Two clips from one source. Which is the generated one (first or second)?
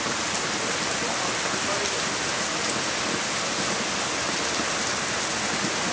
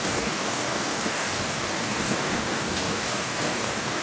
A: second